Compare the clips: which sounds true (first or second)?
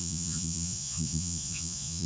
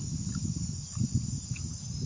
second